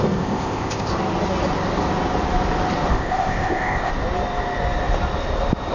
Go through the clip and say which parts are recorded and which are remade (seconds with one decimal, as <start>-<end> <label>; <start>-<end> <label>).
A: 0.0-0.9 remade; 0.9-2.9 recorded; 2.9-3.9 remade; 3.9-5.7 recorded